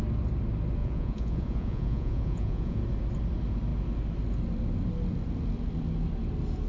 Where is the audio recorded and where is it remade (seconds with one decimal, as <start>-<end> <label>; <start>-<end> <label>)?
0.0-0.8 recorded; 0.8-2.8 remade; 2.8-6.7 recorded